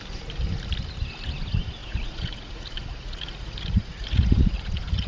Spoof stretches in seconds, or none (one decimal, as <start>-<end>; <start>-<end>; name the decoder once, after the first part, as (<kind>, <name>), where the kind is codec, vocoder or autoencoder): 1.8-5.1 (vocoder, Vocos)